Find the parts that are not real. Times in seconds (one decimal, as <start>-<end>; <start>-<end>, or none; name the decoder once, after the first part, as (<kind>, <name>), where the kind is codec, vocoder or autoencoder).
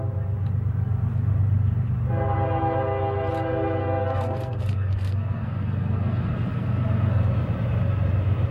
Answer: 3.8-7.2 (codec, SNAC)